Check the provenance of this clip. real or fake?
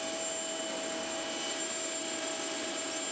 real